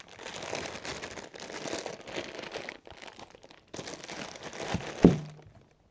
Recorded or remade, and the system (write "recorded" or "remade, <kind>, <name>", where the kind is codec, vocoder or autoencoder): recorded